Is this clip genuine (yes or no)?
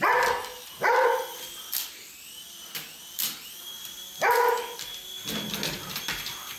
no